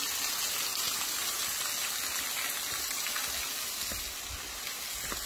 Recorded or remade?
recorded